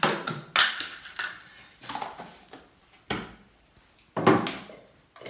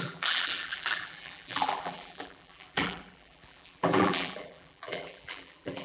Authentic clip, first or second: first